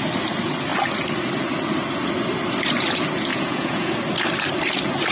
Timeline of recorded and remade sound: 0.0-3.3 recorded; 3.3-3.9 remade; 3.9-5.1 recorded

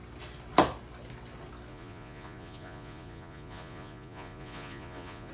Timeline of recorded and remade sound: 0.0-1.7 recorded; 1.7-5.3 remade

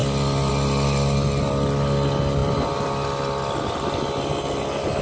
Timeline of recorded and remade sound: 0.0-5.0 recorded

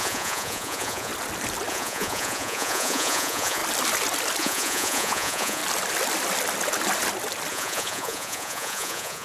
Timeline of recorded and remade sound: 0.0-1.1 remade; 1.1-1.7 recorded; 1.7-3.6 remade; 3.6-4.4 recorded; 4.4-5.6 remade; 5.6-7.5 recorded; 7.5-9.2 remade

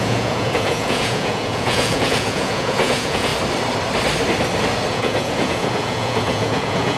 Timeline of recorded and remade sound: 0.0-3.3 remade; 3.3-4.9 recorded; 4.9-7.0 remade